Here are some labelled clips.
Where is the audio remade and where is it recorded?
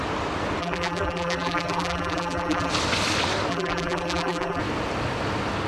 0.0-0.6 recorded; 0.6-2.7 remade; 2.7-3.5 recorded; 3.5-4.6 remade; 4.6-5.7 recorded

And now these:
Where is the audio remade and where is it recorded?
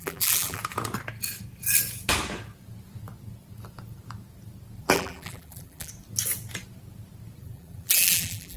0.0-0.6 remade; 0.6-4.8 recorded; 4.8-5.9 remade; 5.9-7.4 recorded; 7.4-8.6 remade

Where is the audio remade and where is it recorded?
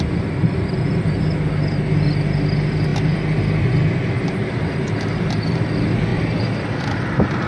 0.0-7.5 recorded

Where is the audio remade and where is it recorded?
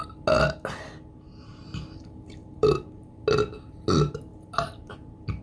0.0-1.5 recorded; 1.5-3.2 remade; 3.2-4.3 recorded; 4.3-5.4 remade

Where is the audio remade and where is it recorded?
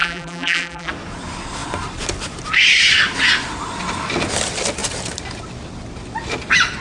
0.0-0.9 remade; 0.9-6.8 recorded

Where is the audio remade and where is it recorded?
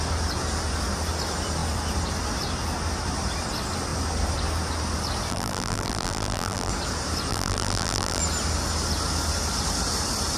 0.0-5.3 recorded; 5.3-6.7 remade; 6.7-7.3 recorded; 7.3-8.2 remade; 8.2-10.4 recorded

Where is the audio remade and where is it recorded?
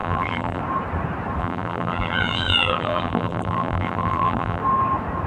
0.0-0.6 remade; 0.6-1.4 recorded; 1.4-4.6 remade; 4.6-5.3 recorded